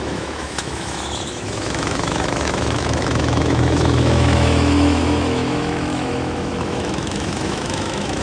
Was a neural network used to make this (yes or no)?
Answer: yes